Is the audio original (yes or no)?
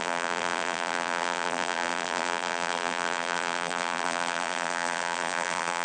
no